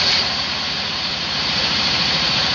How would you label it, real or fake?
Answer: fake